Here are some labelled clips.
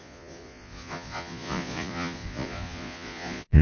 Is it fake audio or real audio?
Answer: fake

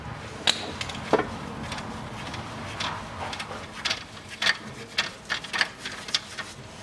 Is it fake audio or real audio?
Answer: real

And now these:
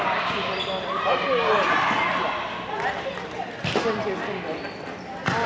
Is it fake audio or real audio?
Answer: real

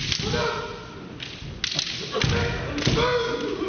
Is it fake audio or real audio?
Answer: real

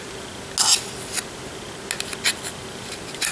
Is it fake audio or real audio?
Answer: real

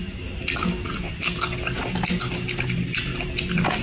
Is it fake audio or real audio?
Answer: real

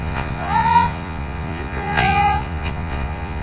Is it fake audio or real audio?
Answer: fake